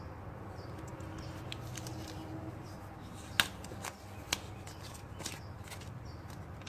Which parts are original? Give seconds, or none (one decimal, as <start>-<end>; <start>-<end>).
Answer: 0.9-4.9